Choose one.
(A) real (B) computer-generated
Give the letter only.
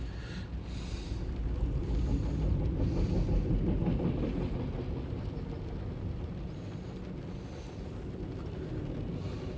A